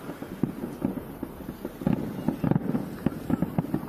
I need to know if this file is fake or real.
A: real